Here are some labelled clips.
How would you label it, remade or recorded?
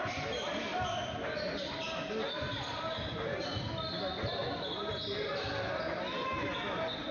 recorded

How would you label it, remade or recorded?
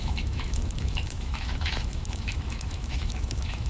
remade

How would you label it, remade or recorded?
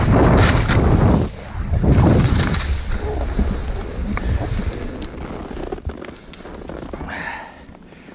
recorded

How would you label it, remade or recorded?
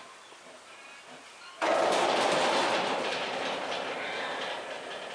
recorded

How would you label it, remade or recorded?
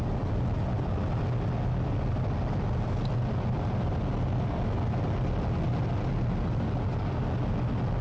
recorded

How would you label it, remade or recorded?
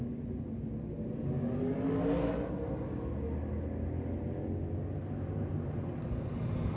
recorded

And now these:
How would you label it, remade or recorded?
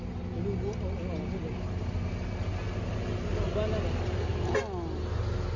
recorded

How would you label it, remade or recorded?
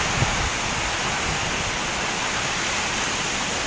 recorded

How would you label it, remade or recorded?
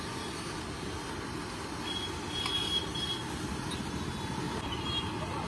recorded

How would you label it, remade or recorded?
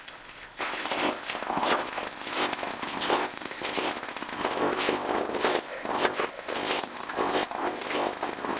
remade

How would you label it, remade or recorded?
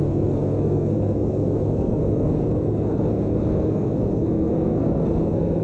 remade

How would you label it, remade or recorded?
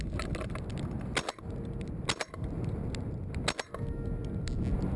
recorded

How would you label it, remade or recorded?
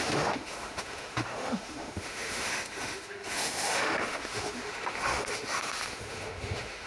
remade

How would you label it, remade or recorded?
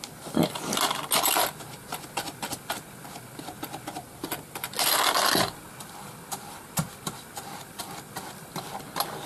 recorded